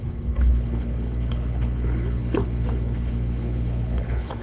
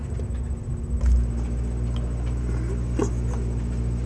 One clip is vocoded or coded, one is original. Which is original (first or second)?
second